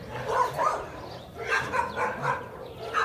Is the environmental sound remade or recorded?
recorded